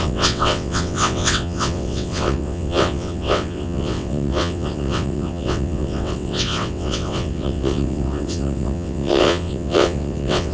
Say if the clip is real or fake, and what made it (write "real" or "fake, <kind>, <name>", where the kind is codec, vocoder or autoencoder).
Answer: fake, vocoder, WaveNeXt